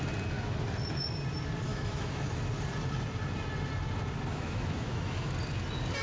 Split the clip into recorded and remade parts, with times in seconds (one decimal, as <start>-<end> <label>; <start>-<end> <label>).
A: 0.0-1.7 recorded; 1.7-2.3 remade; 2.3-4.3 recorded; 4.3-5.3 remade; 5.3-6.0 recorded